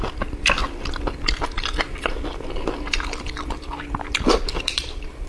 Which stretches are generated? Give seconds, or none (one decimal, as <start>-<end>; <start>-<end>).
0.0-0.6; 3.8-5.3